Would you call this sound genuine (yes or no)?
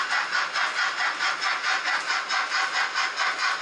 yes